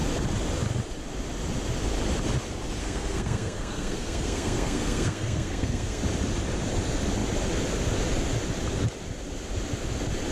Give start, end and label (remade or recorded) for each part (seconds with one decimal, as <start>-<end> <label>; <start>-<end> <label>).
0.0-2.8 recorded; 2.8-6.0 remade; 6.0-10.3 recorded